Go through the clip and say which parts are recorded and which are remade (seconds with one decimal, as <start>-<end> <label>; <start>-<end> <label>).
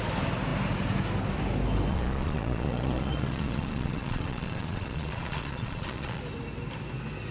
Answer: 0.0-1.9 recorded; 1.9-6.2 remade; 6.2-7.3 recorded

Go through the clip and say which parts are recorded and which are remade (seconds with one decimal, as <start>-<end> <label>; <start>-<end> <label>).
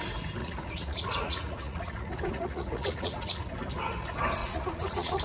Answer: 0.0-0.4 recorded; 0.4-3.4 remade; 3.4-4.4 recorded; 4.4-5.2 remade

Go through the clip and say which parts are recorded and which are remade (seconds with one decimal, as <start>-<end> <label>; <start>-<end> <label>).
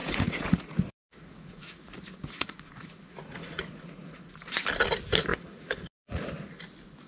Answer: 0.0-4.3 remade; 4.3-5.3 recorded; 5.3-6.3 remade; 6.3-7.1 recorded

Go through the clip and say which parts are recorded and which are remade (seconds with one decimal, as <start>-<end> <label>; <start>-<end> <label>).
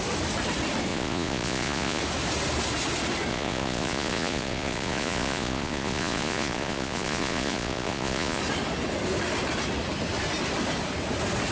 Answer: 0.0-0.9 recorded; 0.9-2.0 remade; 2.0-3.3 recorded; 3.3-8.4 remade; 8.4-11.5 recorded